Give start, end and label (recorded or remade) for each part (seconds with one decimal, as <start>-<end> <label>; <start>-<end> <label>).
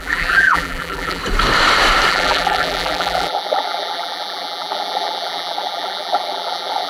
0.0-1.2 remade; 1.2-2.1 recorded; 2.1-6.9 remade